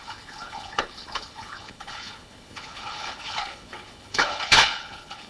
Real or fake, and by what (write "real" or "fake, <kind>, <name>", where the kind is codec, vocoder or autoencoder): fake, codec, HILCodec